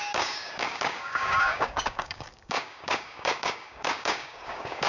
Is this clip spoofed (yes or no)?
yes